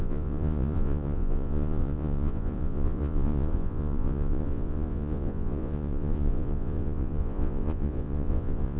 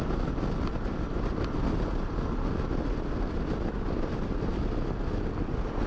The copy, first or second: first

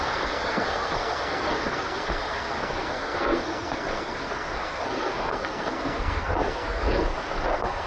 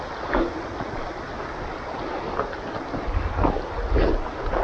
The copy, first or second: first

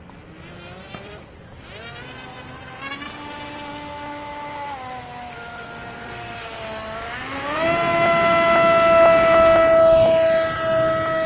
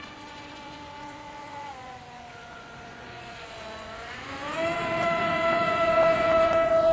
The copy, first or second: second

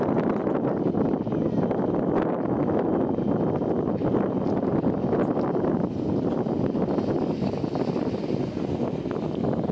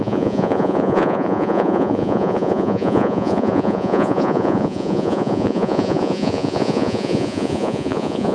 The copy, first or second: second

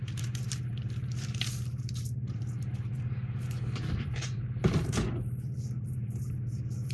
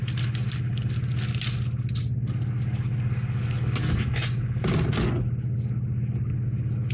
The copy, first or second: first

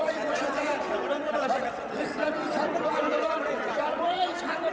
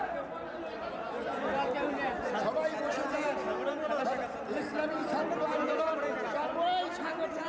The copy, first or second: first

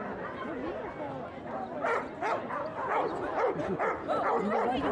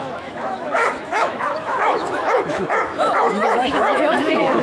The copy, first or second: second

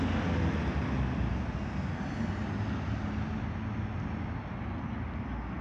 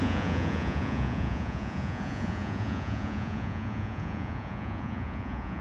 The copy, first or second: second